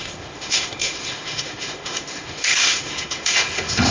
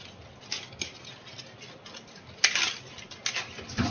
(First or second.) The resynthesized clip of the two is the first